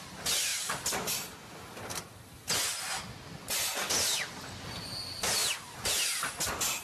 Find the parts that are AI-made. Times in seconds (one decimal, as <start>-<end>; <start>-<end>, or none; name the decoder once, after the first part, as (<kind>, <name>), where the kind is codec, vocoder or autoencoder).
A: none